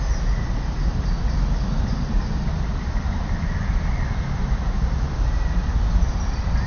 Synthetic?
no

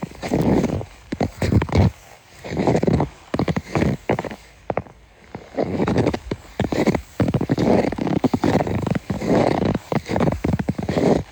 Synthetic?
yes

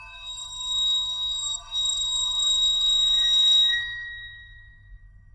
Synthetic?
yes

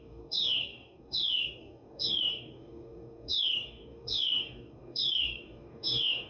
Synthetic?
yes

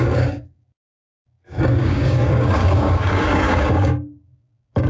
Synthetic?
yes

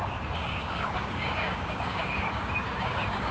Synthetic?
yes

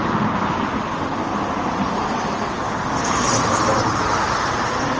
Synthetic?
no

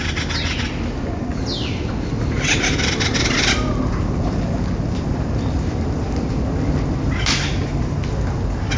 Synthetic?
no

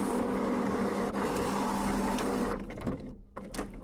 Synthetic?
yes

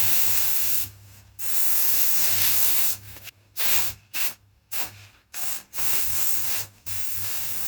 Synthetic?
yes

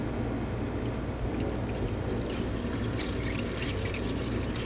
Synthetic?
no